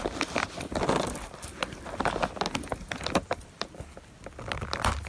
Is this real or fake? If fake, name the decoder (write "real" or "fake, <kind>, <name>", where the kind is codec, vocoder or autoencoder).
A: real